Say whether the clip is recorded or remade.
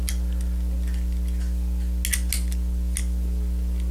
recorded